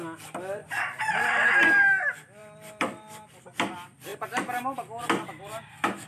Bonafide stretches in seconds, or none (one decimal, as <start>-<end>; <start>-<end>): 0.0-0.6; 1.3-2.4; 3.3-6.1